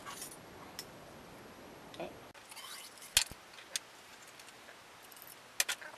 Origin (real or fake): real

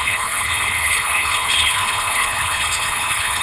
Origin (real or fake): fake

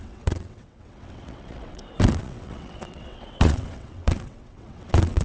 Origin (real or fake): fake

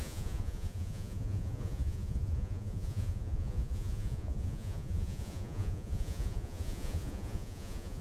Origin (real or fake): fake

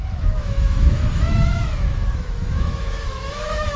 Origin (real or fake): fake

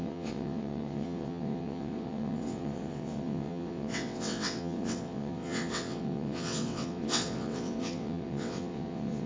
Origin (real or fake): fake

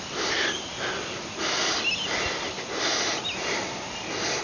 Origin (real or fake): real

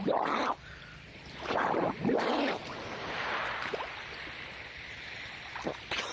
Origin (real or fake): real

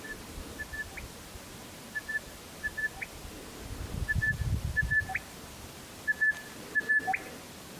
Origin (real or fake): real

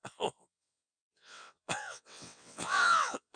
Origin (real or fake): fake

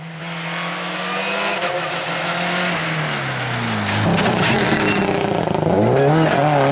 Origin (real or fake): real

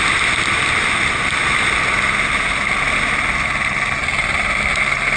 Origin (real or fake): real